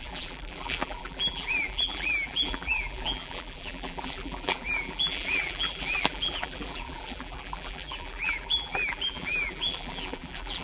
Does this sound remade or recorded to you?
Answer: remade